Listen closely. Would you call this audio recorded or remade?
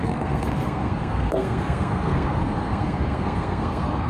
remade